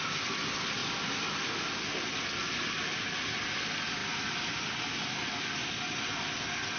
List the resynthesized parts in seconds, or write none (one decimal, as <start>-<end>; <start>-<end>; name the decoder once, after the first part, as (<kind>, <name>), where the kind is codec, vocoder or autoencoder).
none